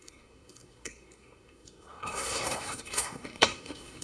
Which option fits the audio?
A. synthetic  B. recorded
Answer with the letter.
A